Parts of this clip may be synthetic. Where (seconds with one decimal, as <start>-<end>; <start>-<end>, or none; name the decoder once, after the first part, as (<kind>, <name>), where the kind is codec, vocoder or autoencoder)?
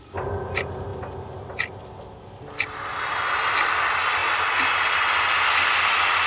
none